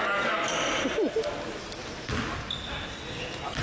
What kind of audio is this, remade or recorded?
recorded